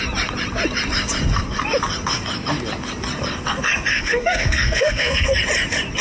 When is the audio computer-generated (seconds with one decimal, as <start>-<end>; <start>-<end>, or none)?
3.9-5.3